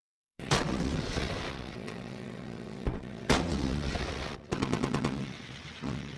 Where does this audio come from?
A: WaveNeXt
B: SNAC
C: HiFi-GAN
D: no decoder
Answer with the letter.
A